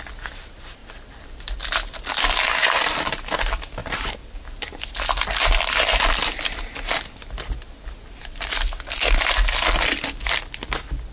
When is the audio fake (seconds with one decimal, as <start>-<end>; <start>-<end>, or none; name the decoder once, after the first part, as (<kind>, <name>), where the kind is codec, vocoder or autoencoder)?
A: 0.8-1.6 (vocoder, BigVGAN v2); 3.8-6.6